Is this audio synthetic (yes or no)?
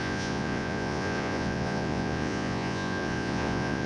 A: yes